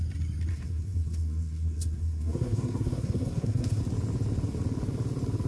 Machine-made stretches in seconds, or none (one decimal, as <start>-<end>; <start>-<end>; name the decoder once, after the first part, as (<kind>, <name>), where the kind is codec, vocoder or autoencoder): 0.5-3.8 (codec, SNAC)